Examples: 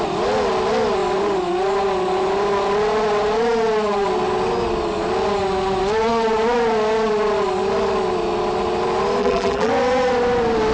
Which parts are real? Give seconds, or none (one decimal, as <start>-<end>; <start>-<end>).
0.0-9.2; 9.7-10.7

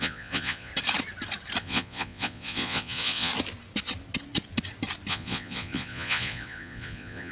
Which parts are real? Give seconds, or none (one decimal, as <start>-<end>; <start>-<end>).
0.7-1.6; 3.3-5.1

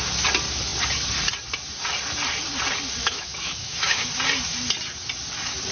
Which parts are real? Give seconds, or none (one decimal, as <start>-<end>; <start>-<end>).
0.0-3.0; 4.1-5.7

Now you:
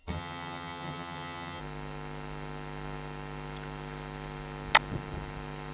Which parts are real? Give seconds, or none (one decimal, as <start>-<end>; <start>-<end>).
1.6-5.7